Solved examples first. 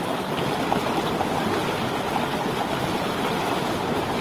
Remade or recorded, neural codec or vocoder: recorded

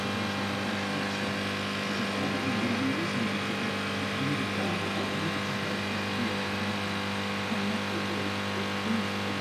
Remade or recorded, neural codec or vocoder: recorded